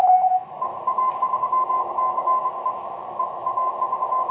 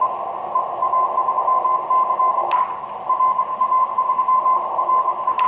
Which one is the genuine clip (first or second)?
second